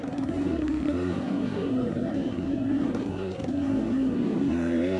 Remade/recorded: remade